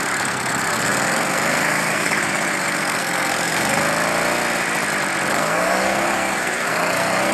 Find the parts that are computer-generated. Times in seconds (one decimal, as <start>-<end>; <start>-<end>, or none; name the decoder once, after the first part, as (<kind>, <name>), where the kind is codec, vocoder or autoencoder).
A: 0.0-3.8 (codec, SNAC); 5.3-7.3